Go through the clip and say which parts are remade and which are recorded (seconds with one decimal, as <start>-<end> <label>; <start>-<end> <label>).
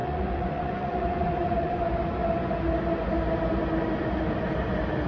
0.0-1.8 remade; 1.8-5.1 recorded